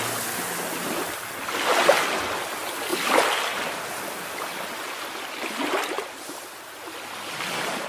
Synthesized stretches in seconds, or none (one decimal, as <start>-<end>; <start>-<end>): none